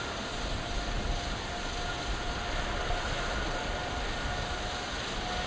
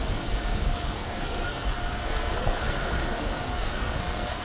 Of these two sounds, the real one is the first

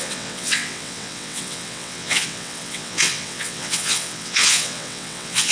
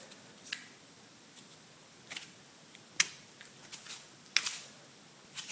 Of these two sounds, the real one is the second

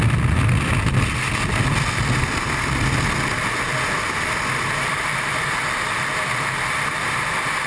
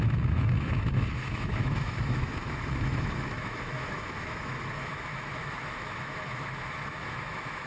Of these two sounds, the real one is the first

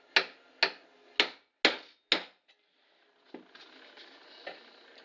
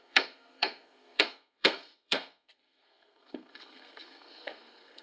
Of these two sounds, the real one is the first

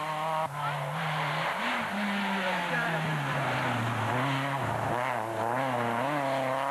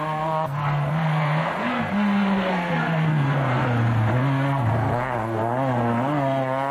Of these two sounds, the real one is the first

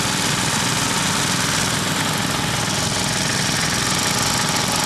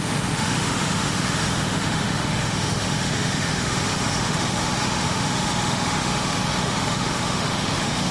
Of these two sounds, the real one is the first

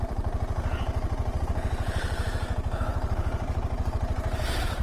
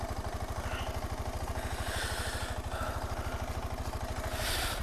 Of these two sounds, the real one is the second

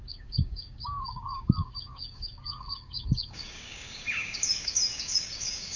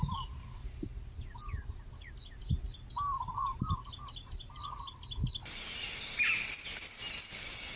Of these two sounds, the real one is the second